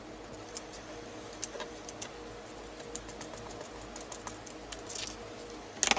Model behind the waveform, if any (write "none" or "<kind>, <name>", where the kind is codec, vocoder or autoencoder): none